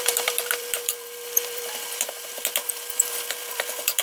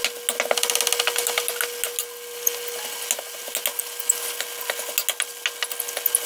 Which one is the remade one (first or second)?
first